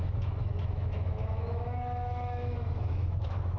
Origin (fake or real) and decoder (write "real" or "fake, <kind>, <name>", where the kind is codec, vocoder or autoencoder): fake, autoencoder, DAC-VAE